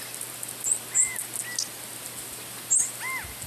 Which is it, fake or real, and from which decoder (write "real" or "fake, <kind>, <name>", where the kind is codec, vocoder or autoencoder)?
real